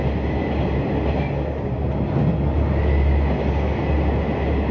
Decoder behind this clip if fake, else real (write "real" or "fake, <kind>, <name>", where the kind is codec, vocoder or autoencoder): real